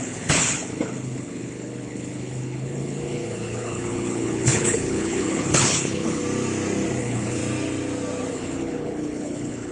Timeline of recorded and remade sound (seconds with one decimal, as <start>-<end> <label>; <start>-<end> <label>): 0.0-6.2 remade; 6.2-7.0 recorded; 7.0-7.4 remade; 7.4-8.3 recorded; 8.3-9.7 remade